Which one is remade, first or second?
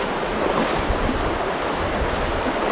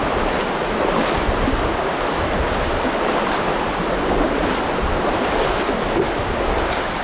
first